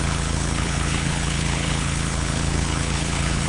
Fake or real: fake